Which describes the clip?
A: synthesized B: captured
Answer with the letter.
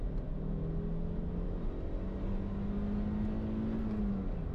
B